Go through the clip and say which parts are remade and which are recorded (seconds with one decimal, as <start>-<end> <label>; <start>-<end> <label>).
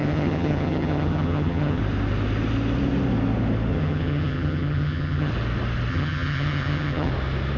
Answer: 0.0-1.8 remade; 1.8-3.7 recorded; 3.7-5.3 remade; 5.3-5.9 recorded; 5.9-7.1 remade; 7.1-7.6 recorded